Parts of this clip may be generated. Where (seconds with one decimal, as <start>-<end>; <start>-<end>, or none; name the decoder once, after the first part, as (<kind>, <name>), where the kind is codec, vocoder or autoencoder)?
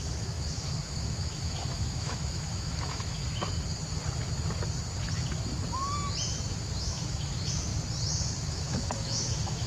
0.0-3.2 (autoencoder, DAC-VAE); 6.8-7.7; 8.4-9.7